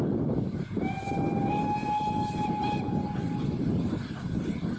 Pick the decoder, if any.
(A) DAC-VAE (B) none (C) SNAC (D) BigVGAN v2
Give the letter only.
B